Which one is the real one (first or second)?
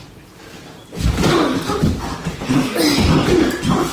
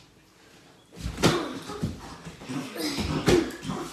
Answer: second